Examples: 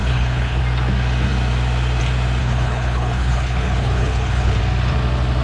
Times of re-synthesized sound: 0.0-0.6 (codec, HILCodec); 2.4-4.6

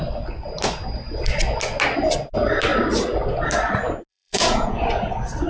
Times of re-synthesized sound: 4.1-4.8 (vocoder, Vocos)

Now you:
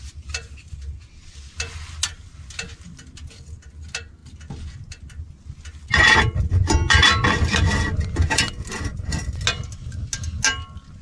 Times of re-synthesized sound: none

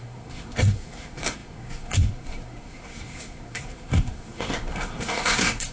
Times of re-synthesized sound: 0.0-5.7 (codec, SNAC)

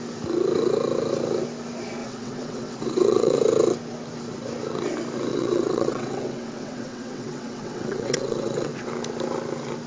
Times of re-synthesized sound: 2.0-3.4 (vocoder, WaveNeXt); 5.3-8.9